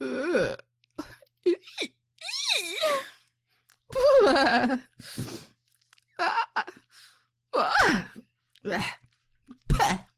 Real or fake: real